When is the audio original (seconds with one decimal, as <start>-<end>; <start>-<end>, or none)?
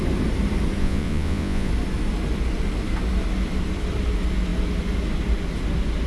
0.0-0.8; 1.7-6.1